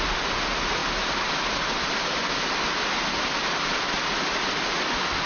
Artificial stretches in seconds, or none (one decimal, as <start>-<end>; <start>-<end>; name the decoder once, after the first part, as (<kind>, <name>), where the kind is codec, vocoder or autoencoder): none

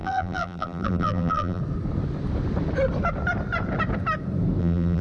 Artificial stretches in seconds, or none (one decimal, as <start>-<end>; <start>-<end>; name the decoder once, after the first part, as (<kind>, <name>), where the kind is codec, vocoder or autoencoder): 0.0-1.6 (vocoder, BigVGAN v2); 4.6-5.0

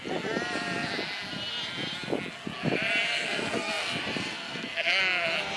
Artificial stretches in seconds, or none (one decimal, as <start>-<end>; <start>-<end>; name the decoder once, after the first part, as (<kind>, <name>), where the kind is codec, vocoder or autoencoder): 3.1-3.9 (codec, SNAC); 4.3-5.0

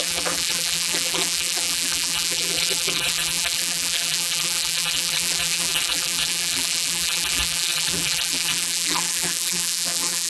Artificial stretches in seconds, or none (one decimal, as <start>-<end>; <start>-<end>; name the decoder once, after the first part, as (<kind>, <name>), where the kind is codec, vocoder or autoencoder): 0.0-10.3 (vocoder, BigVGAN v2)

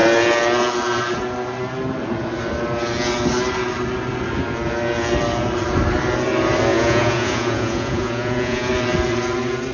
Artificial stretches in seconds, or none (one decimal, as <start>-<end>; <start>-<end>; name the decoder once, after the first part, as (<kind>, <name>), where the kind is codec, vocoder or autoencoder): 6.7-8.7 (vocoder, Vocos)